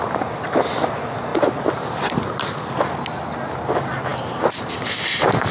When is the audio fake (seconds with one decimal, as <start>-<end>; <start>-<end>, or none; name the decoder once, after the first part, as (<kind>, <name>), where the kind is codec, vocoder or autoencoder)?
none